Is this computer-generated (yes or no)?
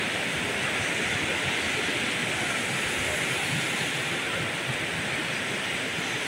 no